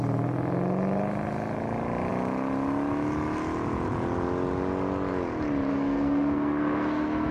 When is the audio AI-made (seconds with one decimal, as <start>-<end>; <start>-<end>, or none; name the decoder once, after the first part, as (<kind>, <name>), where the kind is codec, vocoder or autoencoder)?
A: 5.7-7.3 (codec, SNAC)